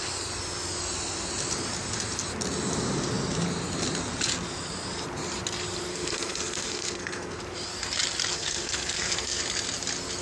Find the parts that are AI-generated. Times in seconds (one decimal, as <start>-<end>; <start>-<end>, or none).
5.9-7.4; 8.3-9.4